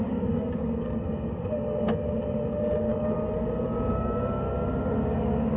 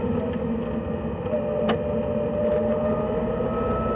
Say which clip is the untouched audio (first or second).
second